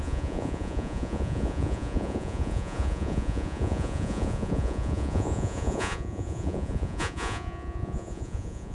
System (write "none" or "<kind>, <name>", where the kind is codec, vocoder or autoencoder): vocoder, Vocos